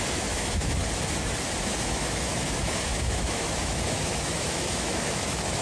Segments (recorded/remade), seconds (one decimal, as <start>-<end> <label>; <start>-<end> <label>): 0.0-0.8 remade; 0.8-1.6 recorded; 1.6-5.6 remade